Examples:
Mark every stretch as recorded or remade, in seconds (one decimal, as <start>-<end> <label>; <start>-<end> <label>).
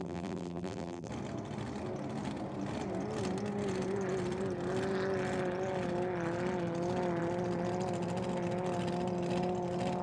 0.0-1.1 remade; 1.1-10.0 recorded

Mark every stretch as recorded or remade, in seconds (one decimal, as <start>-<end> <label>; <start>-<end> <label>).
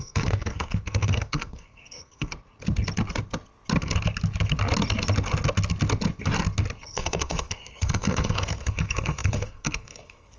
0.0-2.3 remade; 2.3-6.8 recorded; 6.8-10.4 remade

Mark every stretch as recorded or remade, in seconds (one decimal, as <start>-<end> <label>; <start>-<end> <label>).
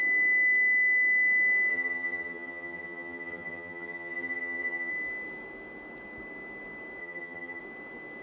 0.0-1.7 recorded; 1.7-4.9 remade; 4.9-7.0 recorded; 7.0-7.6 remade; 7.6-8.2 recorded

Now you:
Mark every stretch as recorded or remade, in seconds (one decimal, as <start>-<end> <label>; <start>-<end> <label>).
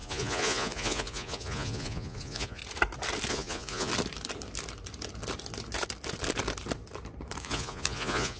0.0-2.6 remade; 2.6-3.3 recorded; 3.3-3.9 remade; 3.9-7.4 recorded; 7.4-8.4 remade